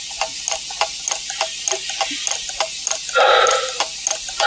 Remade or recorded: recorded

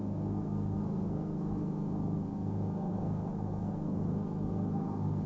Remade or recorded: remade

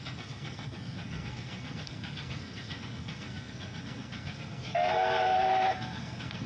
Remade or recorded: remade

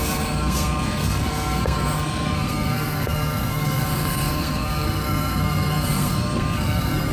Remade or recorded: remade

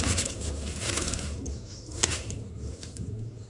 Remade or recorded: remade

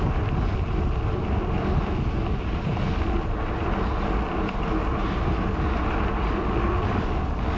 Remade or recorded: recorded